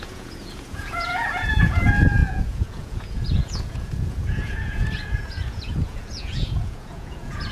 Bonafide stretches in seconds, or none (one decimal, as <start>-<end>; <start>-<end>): none